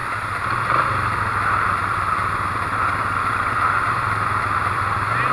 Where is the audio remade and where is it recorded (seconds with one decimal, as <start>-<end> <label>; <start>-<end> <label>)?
0.0-5.3 recorded